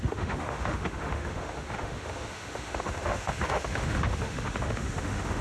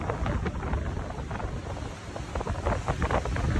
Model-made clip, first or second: first